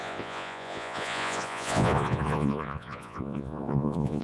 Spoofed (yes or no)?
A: yes